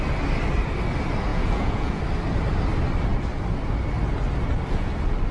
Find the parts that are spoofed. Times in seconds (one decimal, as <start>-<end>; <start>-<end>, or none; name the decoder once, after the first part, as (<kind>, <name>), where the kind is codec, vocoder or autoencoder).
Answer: 1.3-2.0 (vocoder, Vocos)